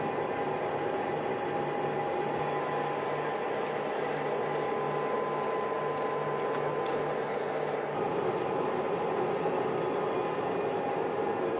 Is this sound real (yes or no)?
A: yes